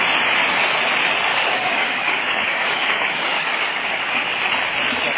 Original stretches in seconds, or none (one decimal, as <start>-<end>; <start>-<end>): 0.0-1.3; 4.4-5.2